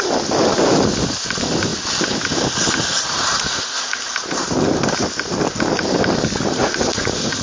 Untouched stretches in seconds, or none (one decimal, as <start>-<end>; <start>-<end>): 0.0-2.9; 3.8-6.6